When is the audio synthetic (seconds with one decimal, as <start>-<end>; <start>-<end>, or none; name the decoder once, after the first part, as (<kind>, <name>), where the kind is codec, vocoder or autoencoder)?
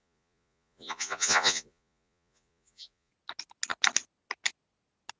0.0-3.1 (vocoder, Vocos)